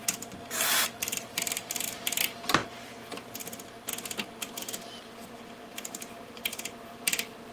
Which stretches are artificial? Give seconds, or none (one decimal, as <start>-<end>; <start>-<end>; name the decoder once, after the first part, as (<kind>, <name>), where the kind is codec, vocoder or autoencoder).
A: 0.0-2.6 (vocoder, BigVGAN v2); 5.6-7.5